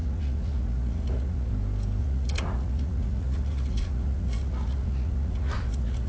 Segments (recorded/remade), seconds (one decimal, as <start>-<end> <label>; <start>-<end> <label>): 0.0-1.5 remade; 1.5-2.0 recorded; 2.0-6.1 remade